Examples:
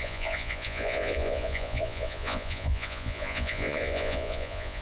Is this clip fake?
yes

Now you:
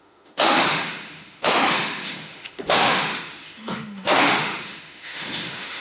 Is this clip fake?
yes